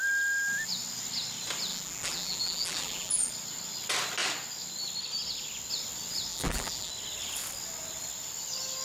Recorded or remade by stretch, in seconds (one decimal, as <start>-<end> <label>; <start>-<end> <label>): 0.0-1.7 recorded; 1.7-3.3 remade; 3.3-6.3 recorded; 6.3-6.9 remade; 6.9-8.8 recorded